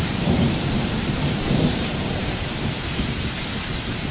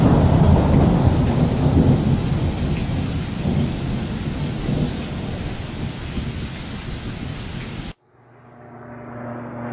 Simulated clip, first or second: first